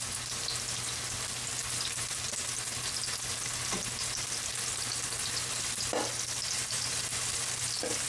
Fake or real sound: real